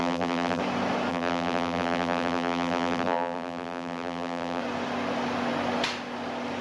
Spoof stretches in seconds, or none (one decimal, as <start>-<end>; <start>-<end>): 0.0-0.6; 1.1-4.6